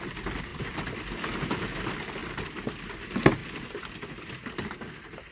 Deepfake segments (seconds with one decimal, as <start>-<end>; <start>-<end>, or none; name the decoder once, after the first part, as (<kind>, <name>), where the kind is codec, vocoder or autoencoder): 0.5-1.8 (vocoder, BigVGAN v2); 2.2-3.0